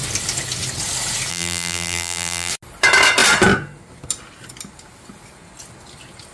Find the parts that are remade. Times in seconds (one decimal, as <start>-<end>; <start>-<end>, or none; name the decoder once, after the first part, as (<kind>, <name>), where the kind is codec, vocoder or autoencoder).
1.3-2.5 (vocoder, BigVGAN v2)